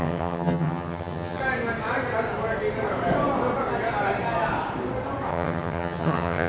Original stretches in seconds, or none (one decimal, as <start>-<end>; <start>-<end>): 1.4-5.3